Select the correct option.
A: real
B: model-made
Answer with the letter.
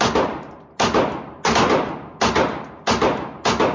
A